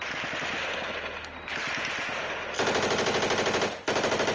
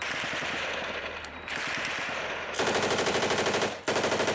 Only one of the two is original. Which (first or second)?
first